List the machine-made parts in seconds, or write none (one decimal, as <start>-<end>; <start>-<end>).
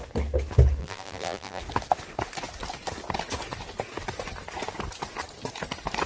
0.8-1.6